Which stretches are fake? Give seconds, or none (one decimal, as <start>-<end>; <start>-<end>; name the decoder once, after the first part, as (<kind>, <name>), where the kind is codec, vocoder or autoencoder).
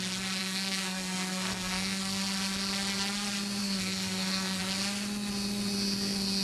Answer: 0.4-2.2 (codec, SNAC); 3.6-4.6